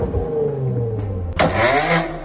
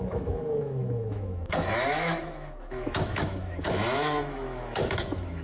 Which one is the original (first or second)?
first